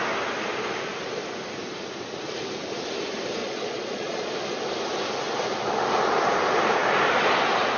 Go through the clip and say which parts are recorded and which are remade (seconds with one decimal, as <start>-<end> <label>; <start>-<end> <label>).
0.0-3.4 recorded; 3.4-4.3 remade; 4.3-7.8 recorded